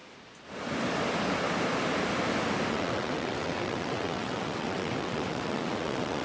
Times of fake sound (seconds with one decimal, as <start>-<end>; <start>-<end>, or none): 2.7-6.2